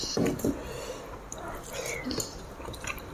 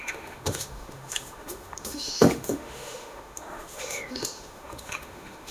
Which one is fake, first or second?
second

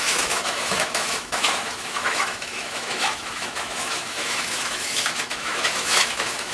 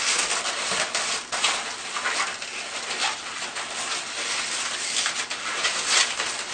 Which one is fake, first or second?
first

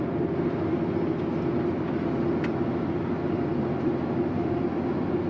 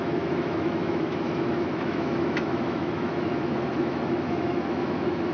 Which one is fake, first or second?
second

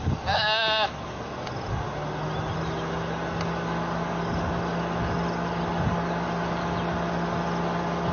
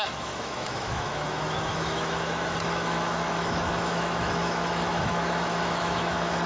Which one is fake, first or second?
second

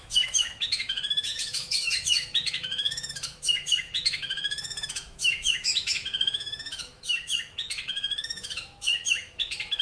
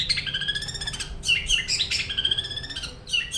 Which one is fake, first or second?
first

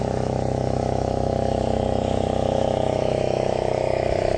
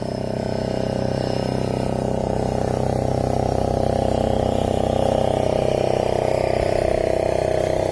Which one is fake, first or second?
first